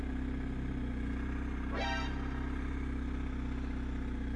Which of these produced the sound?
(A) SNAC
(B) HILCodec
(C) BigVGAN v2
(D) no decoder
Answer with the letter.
D